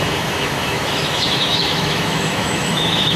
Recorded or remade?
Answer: remade